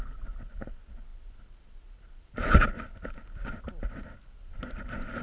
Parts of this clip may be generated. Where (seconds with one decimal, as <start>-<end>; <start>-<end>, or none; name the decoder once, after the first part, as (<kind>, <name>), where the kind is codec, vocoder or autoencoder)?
none